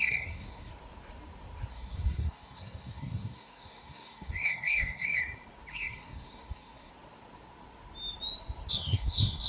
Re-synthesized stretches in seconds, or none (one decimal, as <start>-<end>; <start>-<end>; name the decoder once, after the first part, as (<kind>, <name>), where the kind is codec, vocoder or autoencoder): 0.0-0.7 (codec, SNAC); 1.7-5.2; 5.7-6.9; 8.7-9.5